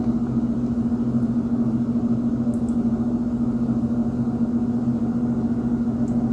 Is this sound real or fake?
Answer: real